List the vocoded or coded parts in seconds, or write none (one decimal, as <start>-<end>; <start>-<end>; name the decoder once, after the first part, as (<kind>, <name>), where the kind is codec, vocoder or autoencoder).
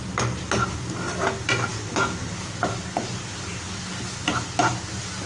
none